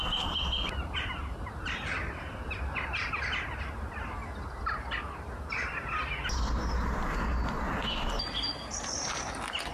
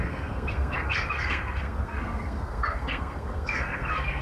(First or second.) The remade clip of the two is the second